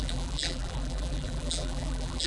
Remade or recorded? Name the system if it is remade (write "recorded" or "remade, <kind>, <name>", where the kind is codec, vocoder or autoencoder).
remade, vocoder, BigVGAN v2